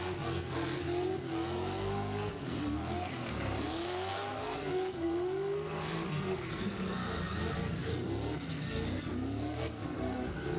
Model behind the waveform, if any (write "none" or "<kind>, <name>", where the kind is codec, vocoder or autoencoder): codec, SNAC